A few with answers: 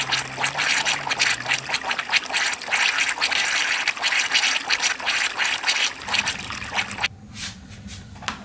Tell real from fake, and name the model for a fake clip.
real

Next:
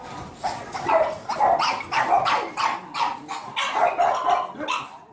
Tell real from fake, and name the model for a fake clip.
real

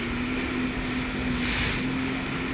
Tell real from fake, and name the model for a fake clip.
real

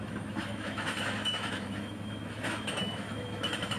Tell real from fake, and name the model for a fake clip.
fake, autoencoder, DAC-VAE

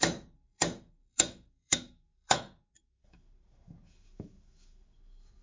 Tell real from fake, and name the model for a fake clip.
fake, autoencoder, DAC-VAE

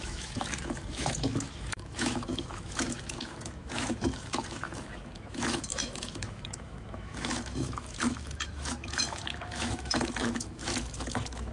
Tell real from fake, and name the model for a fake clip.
fake, autoencoder, DAC-VAE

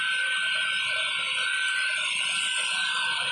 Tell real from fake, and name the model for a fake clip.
real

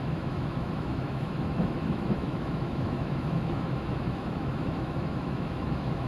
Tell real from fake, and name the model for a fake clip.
fake, autoencoder, DAC-VAE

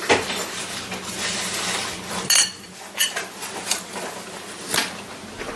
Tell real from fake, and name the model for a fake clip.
real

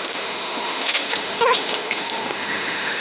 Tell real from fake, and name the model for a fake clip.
fake, autoencoder, DAC-VAE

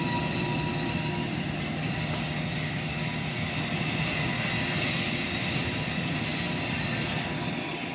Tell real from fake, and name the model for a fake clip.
real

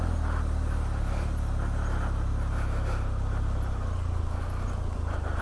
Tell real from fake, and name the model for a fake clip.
real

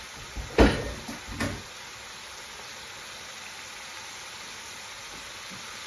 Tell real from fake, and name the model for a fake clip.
real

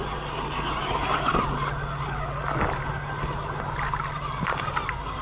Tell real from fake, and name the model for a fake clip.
real